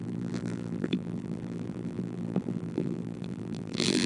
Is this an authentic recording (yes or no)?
no